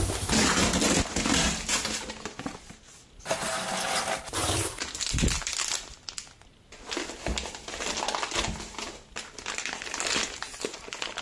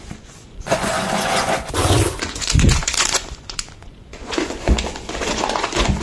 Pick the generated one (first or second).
second